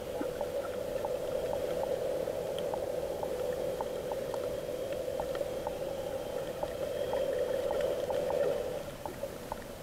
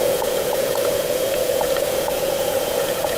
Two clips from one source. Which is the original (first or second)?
first